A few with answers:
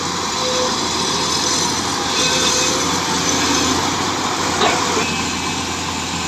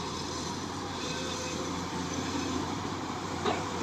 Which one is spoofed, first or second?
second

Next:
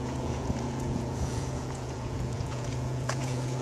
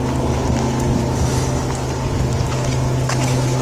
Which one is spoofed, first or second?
first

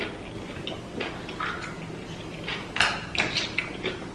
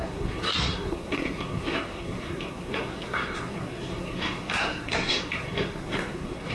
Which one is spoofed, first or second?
second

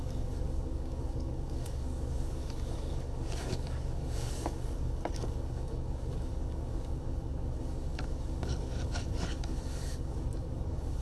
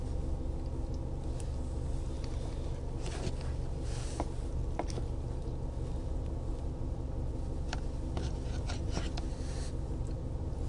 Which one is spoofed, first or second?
first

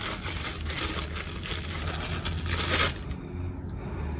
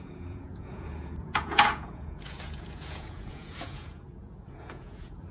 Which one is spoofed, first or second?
second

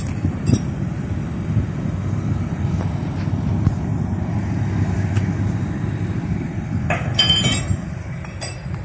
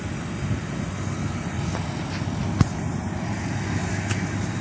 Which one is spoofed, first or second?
first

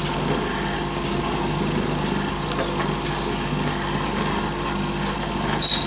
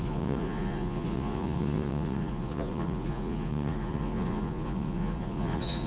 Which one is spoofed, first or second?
second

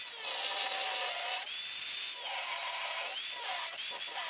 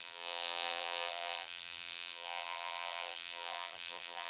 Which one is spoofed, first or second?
second